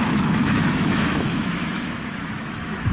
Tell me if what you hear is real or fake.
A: fake